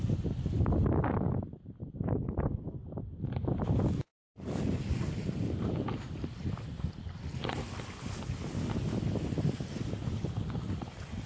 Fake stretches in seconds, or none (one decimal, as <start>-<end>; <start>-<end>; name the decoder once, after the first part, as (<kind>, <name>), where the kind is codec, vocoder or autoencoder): none